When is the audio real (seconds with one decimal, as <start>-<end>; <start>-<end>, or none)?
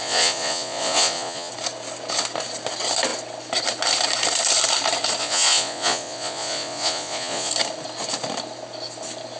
1.5-5.2; 7.5-9.4